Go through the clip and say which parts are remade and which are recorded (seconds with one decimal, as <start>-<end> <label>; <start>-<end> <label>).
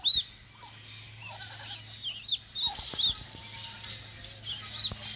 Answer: 0.0-5.2 recorded